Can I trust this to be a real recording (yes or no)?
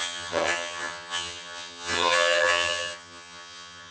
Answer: no